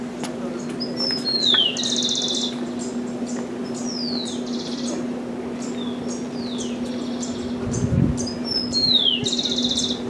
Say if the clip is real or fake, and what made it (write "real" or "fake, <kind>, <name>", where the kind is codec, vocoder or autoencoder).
real